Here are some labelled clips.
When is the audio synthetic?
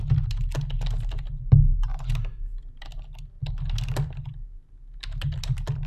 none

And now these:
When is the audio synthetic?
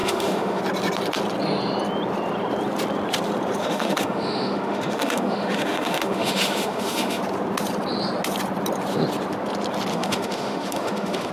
0.0-0.6 (autoencoder, DAC-VAE); 3.6-7.2; 9.9-11.3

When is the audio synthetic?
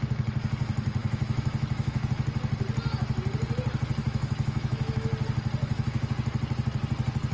1.0-2.1 (autoencoder, DAC-VAE); 4.0-5.1; 5.6-6.1